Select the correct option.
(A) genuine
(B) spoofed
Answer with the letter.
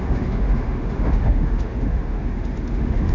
B